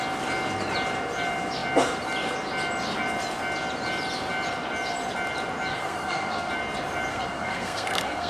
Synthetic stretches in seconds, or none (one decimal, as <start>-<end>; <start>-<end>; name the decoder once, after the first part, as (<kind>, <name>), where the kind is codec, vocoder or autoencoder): 5.7-6.5 (codec, SNAC); 7.1-8.3